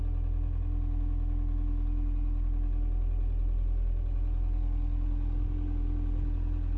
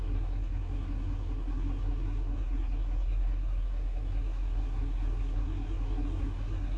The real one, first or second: first